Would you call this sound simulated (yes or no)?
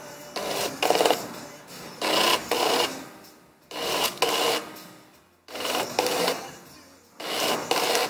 no